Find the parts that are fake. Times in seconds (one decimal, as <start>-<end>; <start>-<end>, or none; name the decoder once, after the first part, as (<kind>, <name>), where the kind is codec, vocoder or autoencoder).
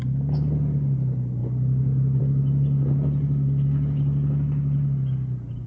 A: none